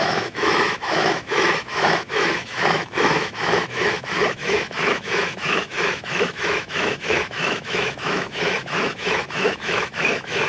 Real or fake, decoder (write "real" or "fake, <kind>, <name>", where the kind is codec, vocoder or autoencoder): fake, autoencoder, DAC-VAE